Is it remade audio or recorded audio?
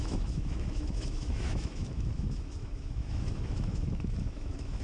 remade